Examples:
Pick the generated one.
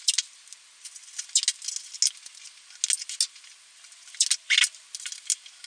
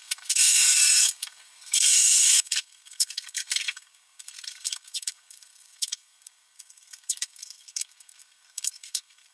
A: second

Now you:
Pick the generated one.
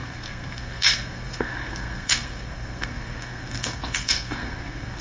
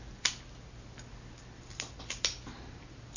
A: first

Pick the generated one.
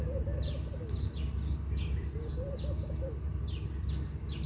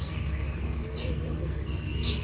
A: second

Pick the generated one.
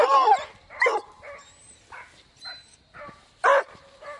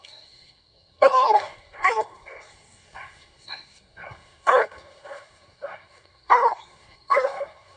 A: second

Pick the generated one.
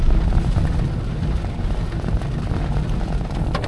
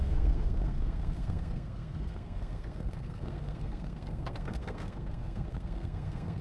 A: second